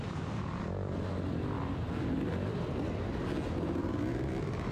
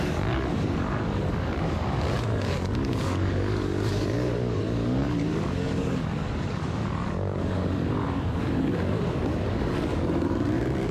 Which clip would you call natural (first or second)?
first